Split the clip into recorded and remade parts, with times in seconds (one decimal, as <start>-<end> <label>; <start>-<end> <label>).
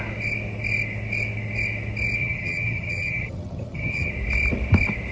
0.0-2.2 recorded; 2.2-4.1 remade; 4.1-5.1 recorded